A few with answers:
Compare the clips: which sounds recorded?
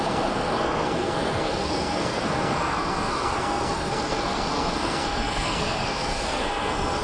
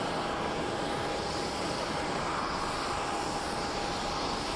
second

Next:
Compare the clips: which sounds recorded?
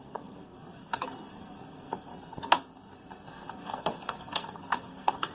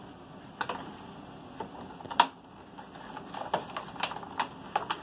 second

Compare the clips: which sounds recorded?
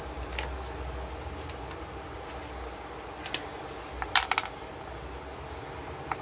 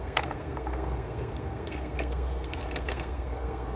first